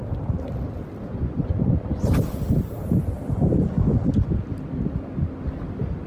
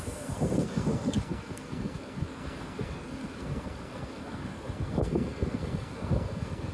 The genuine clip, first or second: first